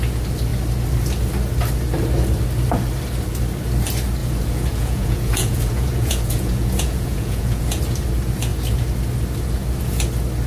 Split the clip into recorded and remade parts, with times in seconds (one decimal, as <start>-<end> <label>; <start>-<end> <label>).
0.0-4.2 recorded; 4.2-7.8 remade; 7.8-10.5 recorded